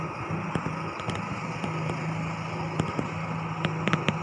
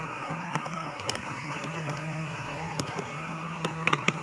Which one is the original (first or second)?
first